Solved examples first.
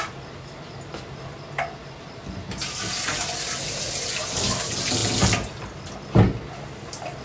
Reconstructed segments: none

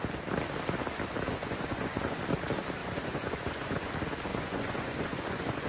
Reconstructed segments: 1.3-2.2 (vocoder, Vocos); 2.8-3.9; 4.3-5.7

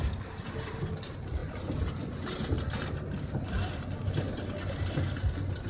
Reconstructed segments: none

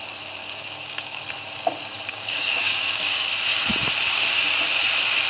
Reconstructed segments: 0.4-1.2 (codec, DAC); 2.1-3.3

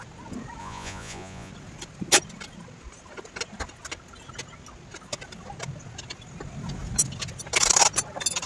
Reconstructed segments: 0.6-1.5 (vocoder, Vocos)

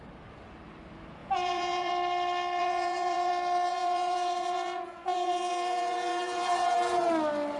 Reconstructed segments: 1.2-1.9 (vocoder, Vocos); 2.6-3.3; 3.7-7.1

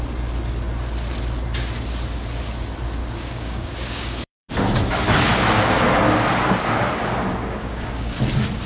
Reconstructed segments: 3.0-4.5 (codec, DAC); 7.4-8.2